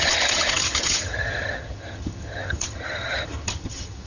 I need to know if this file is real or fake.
fake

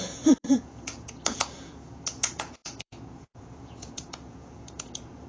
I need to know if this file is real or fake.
fake